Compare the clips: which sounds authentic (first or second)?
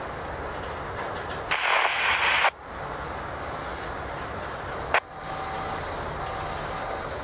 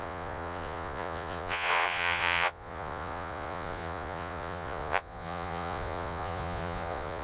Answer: first